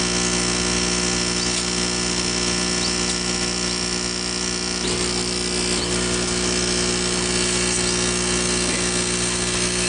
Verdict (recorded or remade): recorded